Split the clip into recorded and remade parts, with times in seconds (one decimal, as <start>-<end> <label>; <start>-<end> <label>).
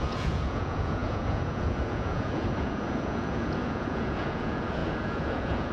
0.0-5.7 remade